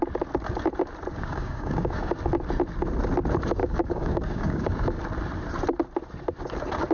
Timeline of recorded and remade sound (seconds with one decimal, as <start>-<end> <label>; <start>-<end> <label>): 0.0-1.1 recorded; 1.1-2.1 remade; 2.1-3.6 recorded; 3.6-5.0 remade; 5.0-6.9 recorded